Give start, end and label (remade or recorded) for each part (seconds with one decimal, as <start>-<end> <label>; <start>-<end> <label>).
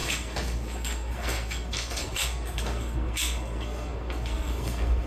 0.0-5.1 remade